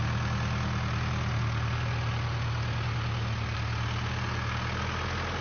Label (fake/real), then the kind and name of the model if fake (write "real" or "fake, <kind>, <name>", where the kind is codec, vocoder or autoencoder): real